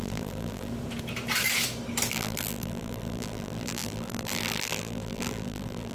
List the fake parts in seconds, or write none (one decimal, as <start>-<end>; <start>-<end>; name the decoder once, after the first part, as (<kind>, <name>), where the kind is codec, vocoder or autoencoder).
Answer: 0.0-0.7 (vocoder, BigVGAN v2); 2.1-5.9